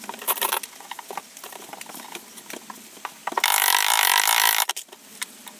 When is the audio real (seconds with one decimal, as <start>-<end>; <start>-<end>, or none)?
0.0-5.6